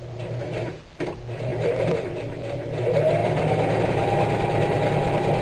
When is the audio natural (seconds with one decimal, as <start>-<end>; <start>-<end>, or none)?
0.0-5.4